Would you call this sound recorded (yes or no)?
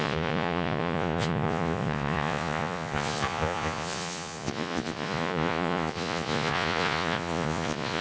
no